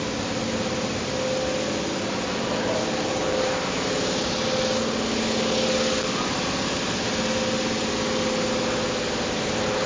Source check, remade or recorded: recorded